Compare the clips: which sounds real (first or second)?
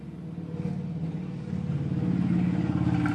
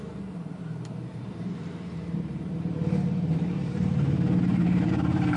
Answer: first